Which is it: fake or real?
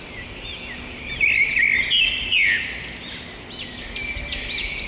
real